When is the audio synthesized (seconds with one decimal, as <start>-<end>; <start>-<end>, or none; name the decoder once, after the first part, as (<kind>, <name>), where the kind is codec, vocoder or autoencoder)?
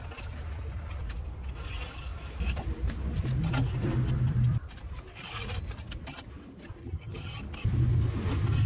6.8-7.4 (vocoder, HiFi-GAN)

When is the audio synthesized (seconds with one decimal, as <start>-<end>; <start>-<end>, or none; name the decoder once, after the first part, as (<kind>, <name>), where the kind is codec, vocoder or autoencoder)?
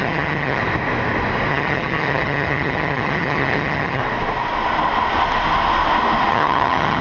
0.0-0.6 (vocoder, HiFi-GAN); 1.5-4.0; 6.3-7.0